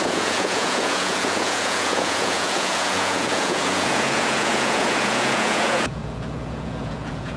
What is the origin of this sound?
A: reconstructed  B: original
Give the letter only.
A